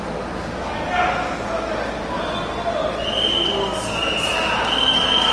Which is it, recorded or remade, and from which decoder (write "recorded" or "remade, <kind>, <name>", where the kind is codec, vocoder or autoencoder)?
recorded